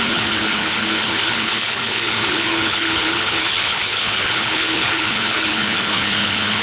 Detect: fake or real fake